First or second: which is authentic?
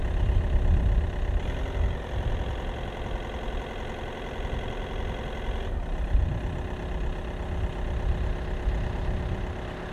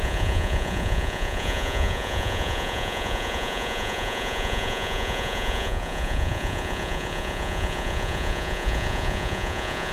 first